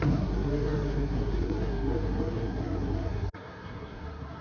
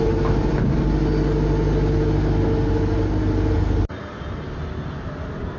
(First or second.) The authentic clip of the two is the second